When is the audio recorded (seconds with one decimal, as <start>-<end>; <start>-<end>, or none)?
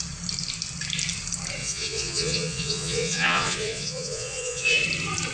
0.0-1.6; 4.8-5.3